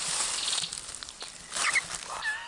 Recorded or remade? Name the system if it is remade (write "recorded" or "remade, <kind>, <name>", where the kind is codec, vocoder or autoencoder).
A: recorded